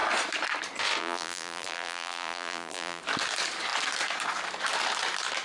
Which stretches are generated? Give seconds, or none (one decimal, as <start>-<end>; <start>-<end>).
1.0-3.0